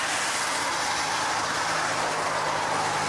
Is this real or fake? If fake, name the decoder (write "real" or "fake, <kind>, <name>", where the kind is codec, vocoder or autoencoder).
real